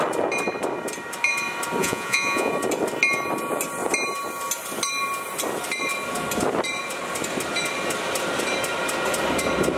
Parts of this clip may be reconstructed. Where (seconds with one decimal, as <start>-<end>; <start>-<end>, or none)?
1.8-2.5